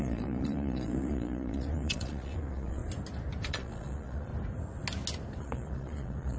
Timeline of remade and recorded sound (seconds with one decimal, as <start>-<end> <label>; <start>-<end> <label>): 0.0-2.8 remade; 2.8-3.5 recorded; 3.5-4.3 remade; 4.3-5.4 recorded; 5.4-6.4 remade